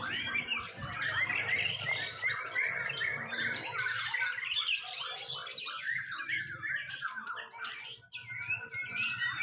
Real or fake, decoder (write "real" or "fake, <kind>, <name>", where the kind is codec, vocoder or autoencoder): fake, vocoder, BigVGAN v2